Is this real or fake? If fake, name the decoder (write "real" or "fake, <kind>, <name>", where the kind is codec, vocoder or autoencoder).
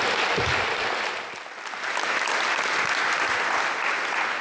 real